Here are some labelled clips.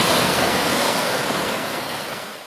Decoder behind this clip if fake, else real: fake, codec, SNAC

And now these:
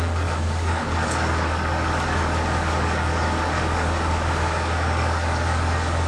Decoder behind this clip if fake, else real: fake, codec, DAC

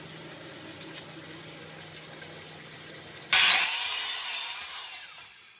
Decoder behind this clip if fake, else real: real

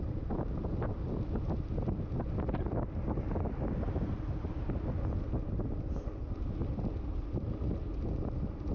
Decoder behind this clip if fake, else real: real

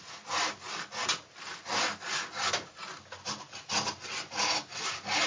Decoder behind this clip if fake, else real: real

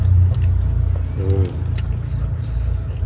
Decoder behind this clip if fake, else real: real